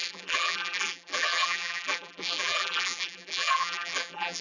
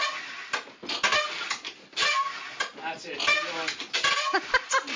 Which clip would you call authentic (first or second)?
second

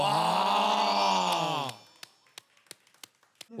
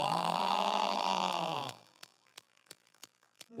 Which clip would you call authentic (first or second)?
first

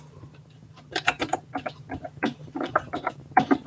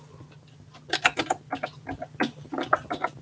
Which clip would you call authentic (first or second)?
second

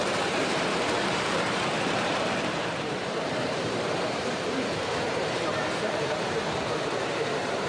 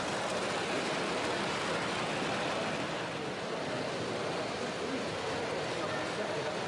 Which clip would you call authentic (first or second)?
second